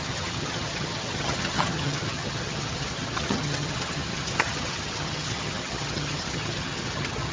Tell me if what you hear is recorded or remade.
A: remade